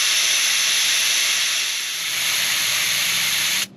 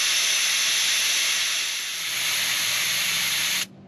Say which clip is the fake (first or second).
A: first